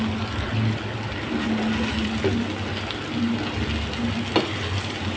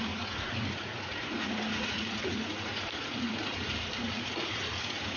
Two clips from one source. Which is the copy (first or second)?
second